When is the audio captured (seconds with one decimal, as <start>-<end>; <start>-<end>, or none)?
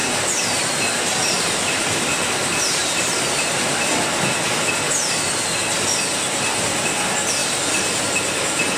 1.8-2.8; 3.6-7.4; 8.0-8.8